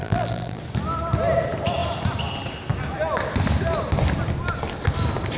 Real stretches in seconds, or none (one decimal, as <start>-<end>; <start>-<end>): 0.6-5.4